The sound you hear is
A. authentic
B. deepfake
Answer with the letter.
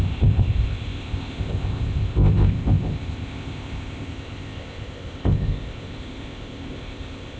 B